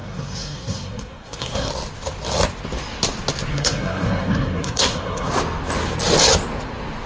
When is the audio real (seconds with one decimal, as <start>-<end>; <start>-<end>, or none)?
1.7-3.5; 5.3-7.1